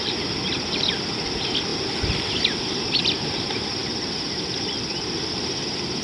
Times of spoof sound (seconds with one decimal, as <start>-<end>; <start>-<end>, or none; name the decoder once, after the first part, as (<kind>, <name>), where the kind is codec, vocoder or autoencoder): 0.0-0.4 (vocoder, BigVGAN v2); 1.1-1.7; 3.0-6.0